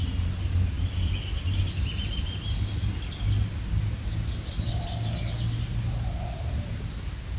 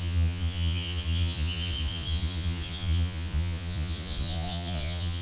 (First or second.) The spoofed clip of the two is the second